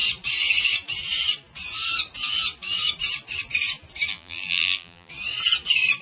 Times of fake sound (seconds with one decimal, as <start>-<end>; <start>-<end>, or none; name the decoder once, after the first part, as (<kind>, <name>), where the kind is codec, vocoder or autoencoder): 4.1-5.1 (vocoder, BigVGAN v2)

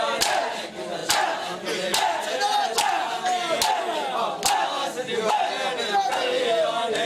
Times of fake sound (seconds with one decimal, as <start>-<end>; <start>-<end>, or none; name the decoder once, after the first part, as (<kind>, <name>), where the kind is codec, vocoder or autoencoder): none

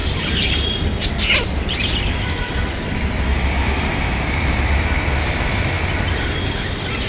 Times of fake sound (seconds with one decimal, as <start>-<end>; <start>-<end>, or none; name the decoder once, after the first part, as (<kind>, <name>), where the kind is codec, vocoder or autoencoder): 0.0-7.1 (vocoder, BigVGAN v2)

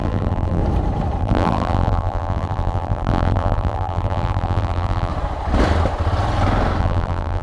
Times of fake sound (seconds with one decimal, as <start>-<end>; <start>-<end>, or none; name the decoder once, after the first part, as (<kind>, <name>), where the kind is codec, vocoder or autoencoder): 0.0-0.6 (vocoder, BigVGAN v2); 1.2-5.1; 6.8-7.4

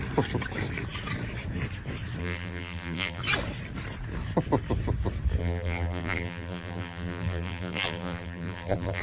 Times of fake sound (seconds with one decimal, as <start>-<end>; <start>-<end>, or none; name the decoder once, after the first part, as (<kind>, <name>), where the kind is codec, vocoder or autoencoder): 2.2-3.2 (vocoder, BigVGAN v2); 5.4-9.0

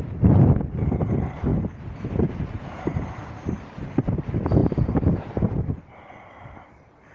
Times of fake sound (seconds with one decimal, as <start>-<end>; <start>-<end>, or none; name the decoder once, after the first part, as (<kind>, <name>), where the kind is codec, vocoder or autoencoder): 4.6-5.3 (vocoder, BigVGAN v2)

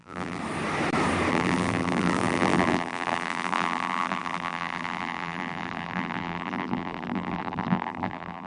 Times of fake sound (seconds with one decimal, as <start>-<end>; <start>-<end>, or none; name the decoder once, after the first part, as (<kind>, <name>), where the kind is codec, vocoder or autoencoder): 0.0-0.4 (vocoder, BigVGAN v2); 1.3-8.5